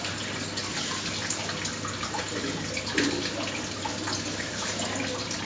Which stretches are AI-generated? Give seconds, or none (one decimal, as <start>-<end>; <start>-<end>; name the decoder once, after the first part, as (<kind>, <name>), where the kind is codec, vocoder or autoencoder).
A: none